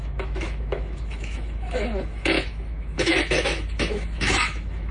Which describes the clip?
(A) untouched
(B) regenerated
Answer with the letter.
B